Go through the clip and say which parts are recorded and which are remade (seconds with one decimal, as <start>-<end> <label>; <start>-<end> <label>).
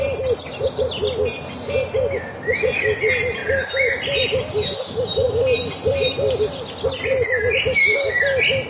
0.0-8.7 recorded